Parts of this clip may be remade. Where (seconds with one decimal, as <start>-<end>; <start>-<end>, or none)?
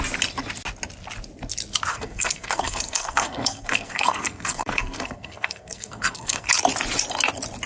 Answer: 1.9-6.5